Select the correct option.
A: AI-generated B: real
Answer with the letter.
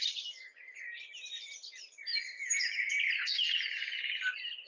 B